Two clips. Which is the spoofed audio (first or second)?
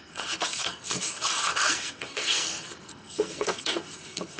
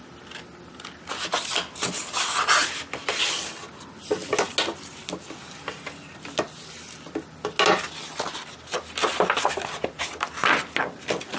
first